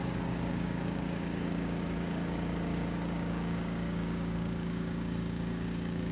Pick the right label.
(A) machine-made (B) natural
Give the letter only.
A